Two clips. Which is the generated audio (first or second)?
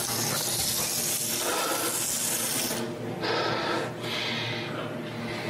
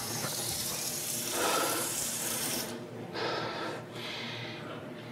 second